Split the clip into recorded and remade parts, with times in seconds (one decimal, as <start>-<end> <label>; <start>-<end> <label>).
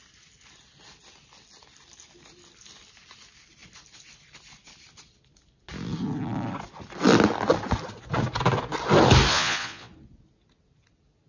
0.0-9.3 recorded; 9.3-9.9 remade; 9.9-11.3 recorded